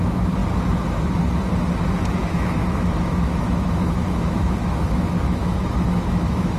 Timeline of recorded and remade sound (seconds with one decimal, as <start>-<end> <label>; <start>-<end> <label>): 0.0-2.2 recorded; 2.2-6.6 remade